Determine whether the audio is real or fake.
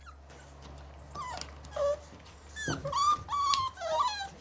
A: real